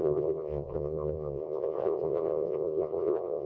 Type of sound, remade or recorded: remade